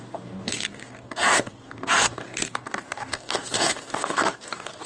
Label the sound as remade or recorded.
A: remade